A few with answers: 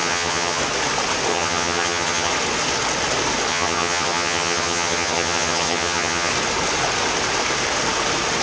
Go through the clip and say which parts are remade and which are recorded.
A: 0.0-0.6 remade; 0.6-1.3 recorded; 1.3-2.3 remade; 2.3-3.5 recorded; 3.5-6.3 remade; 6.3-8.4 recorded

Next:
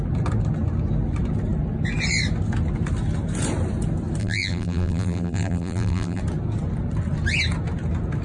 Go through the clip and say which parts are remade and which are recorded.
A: 0.0-4.2 recorded; 4.2-6.2 remade; 6.2-8.2 recorded

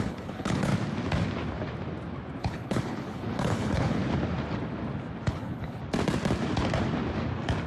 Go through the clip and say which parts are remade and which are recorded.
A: 0.0-0.7 remade; 0.7-2.4 recorded; 2.4-4.0 remade; 4.0-5.3 recorded; 5.3-5.8 remade; 5.8-7.7 recorded

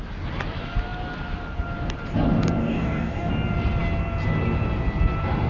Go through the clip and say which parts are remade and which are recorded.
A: 0.0-2.6 recorded; 2.6-3.3 remade; 3.3-5.5 recorded

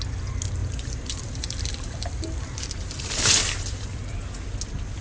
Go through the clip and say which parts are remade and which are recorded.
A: 0.0-0.6 recorded; 0.6-3.2 remade; 3.2-5.0 recorded

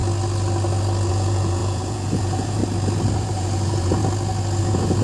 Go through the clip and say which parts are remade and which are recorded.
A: 0.0-1.1 recorded; 1.1-2.6 remade; 2.6-3.2 recorded; 3.2-4.0 remade; 4.0-4.6 recorded; 4.6-5.0 remade